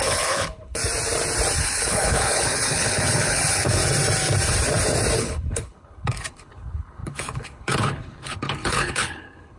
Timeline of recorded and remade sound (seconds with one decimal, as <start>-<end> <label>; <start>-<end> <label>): 0.0-0.8 remade; 0.8-1.6 recorded; 1.6-3.8 remade; 3.8-5.2 recorded; 5.2-9.6 remade